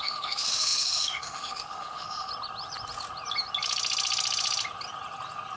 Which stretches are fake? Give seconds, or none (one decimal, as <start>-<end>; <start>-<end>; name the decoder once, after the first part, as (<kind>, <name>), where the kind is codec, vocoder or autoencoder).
0.0-2.3 (autoencoder, DAC-VAE)